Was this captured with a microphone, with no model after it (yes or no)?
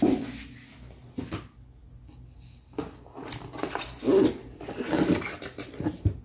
yes